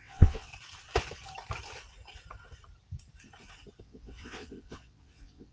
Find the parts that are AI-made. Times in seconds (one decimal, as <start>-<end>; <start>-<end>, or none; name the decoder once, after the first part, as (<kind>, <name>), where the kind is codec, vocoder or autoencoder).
0.0-0.5 (vocoder, WaveNeXt); 3.8-5.5